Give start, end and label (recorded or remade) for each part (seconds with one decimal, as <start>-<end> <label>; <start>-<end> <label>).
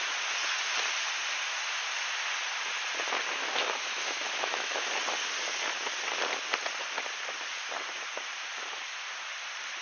0.0-3.4 recorded; 3.4-4.9 remade; 4.9-9.8 recorded